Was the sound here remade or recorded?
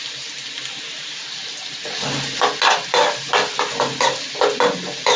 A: recorded